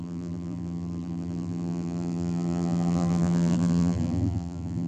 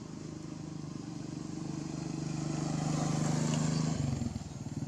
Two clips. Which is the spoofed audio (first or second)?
first